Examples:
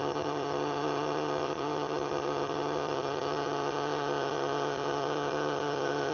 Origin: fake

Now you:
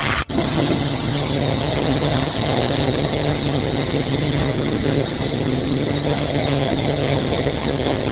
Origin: fake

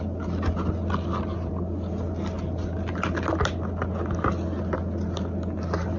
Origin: real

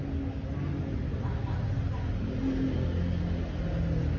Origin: real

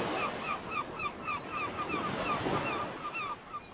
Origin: real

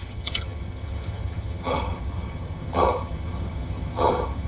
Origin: fake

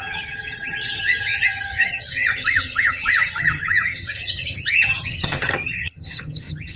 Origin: fake